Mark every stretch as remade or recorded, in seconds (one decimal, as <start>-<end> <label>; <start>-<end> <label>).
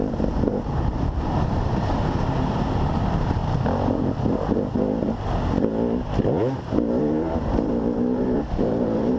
0.0-3.4 remade; 3.4-7.0 recorded; 7.0-9.2 remade